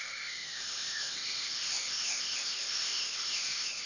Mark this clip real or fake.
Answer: fake